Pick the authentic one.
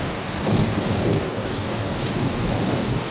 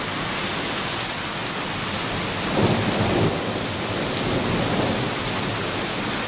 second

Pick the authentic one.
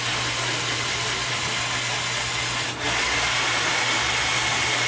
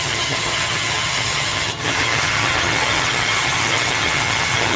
first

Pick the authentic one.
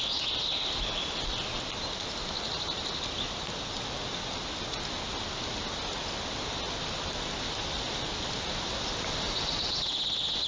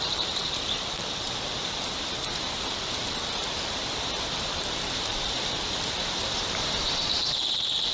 first